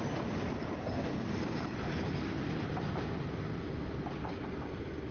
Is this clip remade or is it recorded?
recorded